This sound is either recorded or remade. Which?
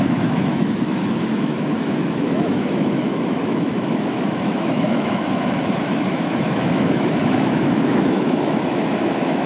remade